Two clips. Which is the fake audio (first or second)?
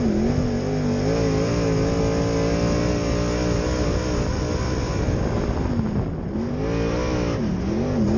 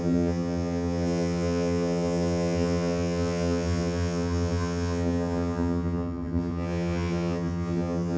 second